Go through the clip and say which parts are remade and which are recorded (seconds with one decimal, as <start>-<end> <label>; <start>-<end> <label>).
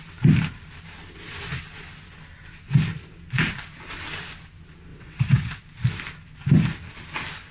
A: 0.0-4.9 recorded; 4.9-5.6 remade; 5.6-7.5 recorded